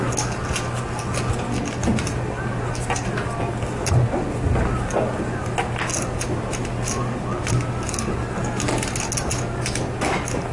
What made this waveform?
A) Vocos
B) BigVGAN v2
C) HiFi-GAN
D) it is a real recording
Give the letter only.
D